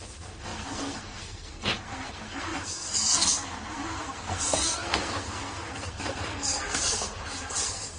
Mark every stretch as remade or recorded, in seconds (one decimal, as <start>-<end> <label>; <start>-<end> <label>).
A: 0.0-8.0 remade